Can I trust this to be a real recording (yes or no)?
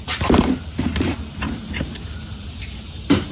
no